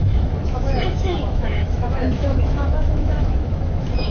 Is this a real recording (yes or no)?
no